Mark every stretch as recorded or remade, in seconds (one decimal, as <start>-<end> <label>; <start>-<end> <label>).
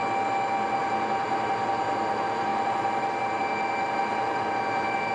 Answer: 0.0-5.1 recorded